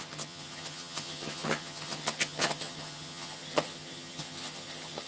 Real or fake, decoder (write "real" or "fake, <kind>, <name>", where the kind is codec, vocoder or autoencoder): fake, vocoder, HiFi-GAN